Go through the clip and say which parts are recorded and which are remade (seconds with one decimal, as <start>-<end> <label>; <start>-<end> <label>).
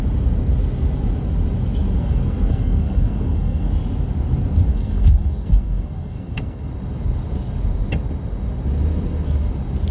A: 0.0-2.0 recorded; 2.0-3.7 remade; 3.7-4.7 recorded; 4.7-6.7 remade; 6.7-9.9 recorded